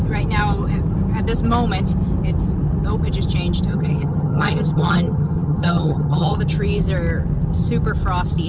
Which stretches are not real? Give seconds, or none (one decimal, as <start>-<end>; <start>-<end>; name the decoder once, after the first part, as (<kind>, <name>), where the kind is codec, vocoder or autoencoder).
3.7-6.4 (vocoder, HiFi-GAN)